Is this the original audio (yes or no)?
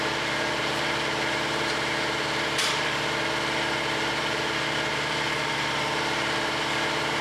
no